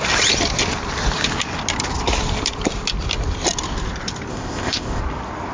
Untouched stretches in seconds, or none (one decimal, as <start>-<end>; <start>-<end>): 0.0-4.3; 5.0-5.5